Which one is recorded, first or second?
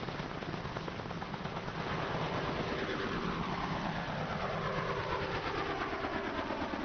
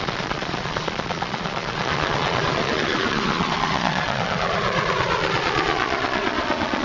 first